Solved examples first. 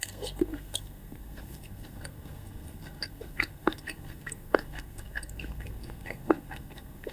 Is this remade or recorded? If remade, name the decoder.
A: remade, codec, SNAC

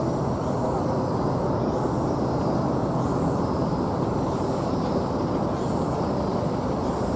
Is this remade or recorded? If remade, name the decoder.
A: recorded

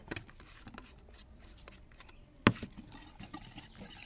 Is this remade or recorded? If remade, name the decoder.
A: recorded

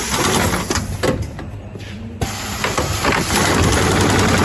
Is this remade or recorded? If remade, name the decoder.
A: recorded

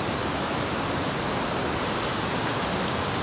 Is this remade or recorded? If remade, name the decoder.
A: recorded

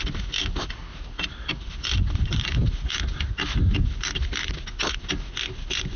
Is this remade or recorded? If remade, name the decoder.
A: recorded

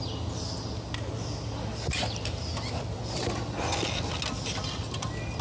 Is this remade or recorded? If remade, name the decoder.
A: recorded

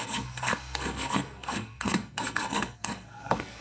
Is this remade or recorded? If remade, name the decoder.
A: remade, codec, SNAC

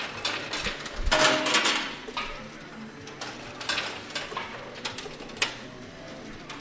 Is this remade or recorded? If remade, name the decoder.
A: recorded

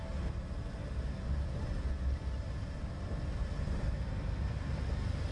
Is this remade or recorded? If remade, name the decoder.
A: recorded